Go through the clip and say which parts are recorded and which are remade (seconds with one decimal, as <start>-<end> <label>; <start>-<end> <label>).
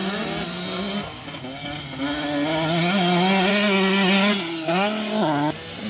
0.0-5.9 recorded